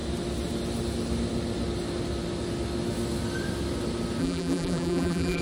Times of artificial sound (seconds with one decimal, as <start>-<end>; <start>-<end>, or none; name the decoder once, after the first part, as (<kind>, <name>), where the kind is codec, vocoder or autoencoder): 4.2-5.4 (vocoder, BigVGAN v2)